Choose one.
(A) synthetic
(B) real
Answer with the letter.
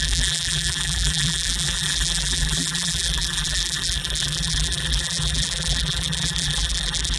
A